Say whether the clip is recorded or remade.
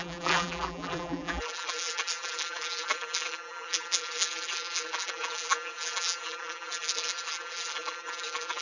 remade